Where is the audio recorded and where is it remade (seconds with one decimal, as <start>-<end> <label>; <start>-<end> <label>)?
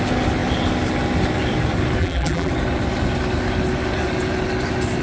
0.0-2.0 recorded; 2.0-2.5 remade; 2.5-5.0 recorded